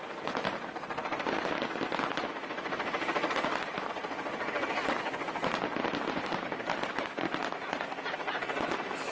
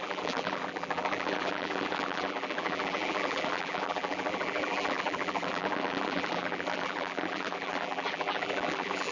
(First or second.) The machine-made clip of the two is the second